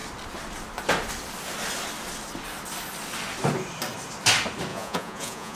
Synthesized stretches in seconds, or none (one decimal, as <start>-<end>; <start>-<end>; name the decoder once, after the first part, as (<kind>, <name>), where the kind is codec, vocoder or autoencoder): 4.7-5.6 (vocoder, Vocos)